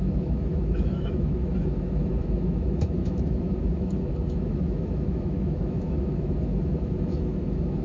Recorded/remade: remade